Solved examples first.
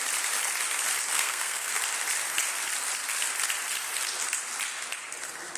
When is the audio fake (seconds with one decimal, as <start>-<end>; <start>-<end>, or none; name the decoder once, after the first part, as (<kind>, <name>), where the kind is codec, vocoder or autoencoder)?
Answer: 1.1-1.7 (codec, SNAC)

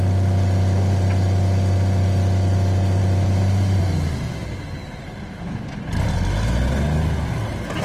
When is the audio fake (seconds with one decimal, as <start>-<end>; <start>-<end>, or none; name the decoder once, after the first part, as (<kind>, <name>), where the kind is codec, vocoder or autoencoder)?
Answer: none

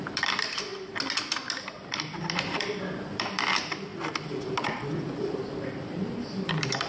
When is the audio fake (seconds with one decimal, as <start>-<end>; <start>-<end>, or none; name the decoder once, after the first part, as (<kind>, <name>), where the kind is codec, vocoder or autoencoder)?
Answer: 0.0-0.7 (vocoder, BigVGAN v2); 2.2-3.9; 5.2-6.9